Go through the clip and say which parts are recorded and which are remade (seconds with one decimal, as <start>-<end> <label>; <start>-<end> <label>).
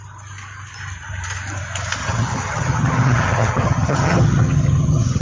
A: 0.0-2.0 recorded; 2.0-5.2 remade